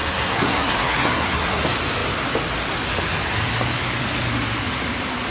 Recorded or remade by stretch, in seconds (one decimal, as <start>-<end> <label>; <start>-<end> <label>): 0.0-1.6 remade; 1.6-5.3 recorded